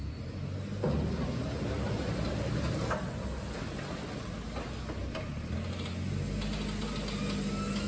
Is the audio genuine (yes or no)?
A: yes